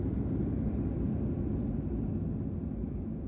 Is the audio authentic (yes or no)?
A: yes